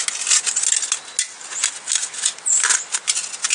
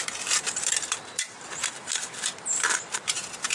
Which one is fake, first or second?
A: second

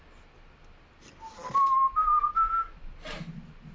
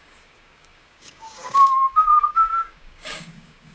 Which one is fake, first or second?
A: second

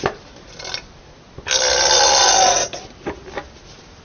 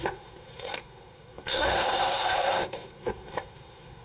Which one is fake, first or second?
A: second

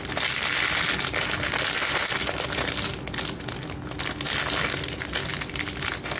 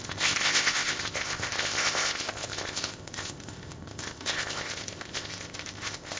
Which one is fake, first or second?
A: second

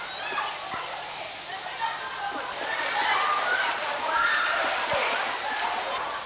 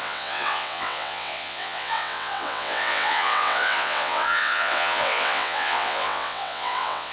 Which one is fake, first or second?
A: second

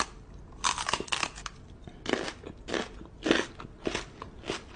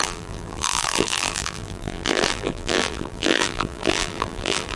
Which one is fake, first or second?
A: second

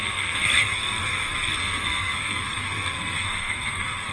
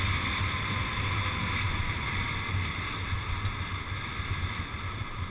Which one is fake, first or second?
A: first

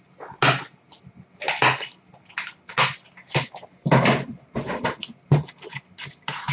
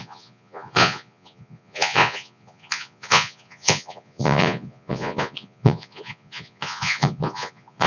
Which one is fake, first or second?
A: second